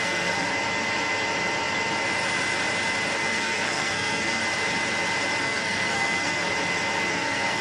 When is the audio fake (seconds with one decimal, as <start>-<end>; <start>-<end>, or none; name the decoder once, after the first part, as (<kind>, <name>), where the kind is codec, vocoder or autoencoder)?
0.0-0.5 (codec, SNAC); 3.2-4.4; 5.4-6.5; 7.1-7.6